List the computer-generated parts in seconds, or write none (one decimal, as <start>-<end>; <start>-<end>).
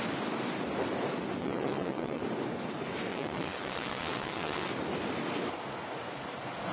1.4-2.2; 3.1-4.7